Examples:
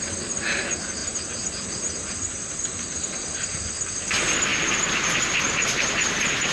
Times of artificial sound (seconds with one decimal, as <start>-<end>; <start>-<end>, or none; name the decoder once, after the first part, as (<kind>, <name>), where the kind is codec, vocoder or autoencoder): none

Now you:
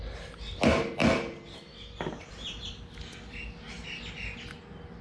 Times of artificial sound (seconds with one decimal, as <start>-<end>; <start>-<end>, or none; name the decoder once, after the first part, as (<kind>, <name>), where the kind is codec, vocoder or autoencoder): none

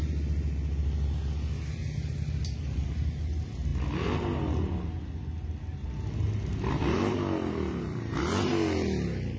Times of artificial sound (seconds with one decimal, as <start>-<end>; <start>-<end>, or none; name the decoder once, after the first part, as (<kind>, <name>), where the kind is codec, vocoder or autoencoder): none